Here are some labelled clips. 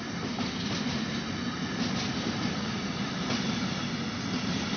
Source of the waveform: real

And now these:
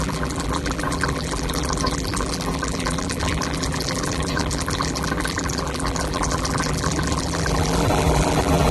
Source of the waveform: fake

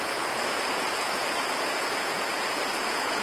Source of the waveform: fake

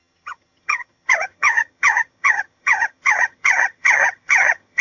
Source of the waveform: fake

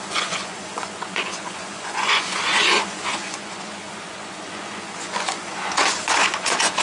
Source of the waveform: fake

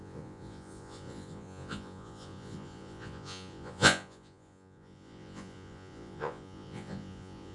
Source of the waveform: fake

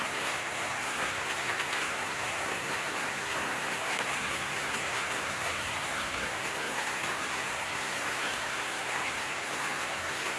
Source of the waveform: fake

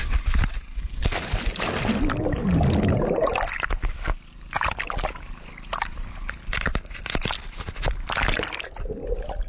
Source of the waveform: real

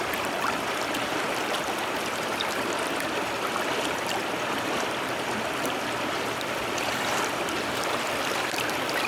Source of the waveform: fake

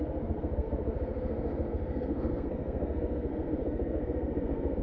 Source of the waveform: fake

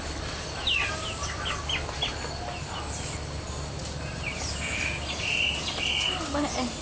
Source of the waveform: real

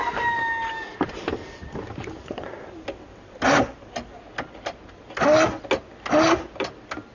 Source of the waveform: real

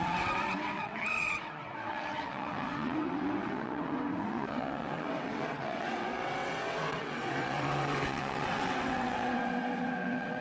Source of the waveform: fake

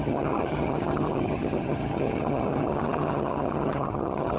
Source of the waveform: fake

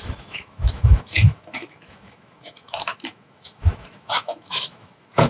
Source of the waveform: fake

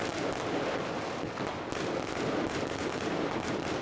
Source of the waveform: real